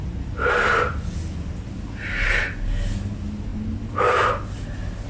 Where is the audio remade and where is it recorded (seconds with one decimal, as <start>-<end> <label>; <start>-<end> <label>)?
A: 0.0-5.1 recorded